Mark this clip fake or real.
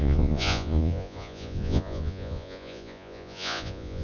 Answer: fake